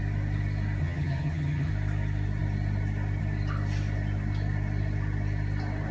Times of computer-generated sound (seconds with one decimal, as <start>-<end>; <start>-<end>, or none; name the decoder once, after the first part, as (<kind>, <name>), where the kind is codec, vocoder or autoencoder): 0.8-1.7 (vocoder, HiFi-GAN)